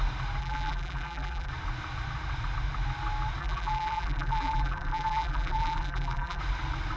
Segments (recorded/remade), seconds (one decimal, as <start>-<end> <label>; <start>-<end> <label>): 0.0-0.4 recorded; 0.4-1.5 remade; 1.5-3.4 recorded; 3.4-6.4 remade; 6.4-7.0 recorded